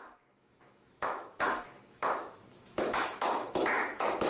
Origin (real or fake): fake